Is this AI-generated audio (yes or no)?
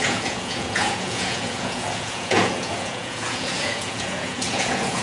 yes